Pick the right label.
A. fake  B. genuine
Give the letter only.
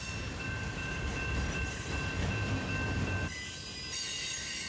B